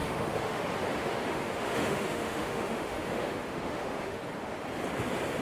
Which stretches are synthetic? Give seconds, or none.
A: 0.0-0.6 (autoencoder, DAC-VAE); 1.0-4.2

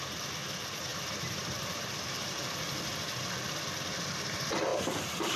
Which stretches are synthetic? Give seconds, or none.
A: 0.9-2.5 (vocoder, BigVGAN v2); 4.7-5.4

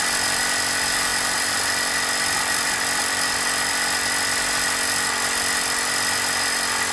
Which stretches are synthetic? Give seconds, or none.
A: none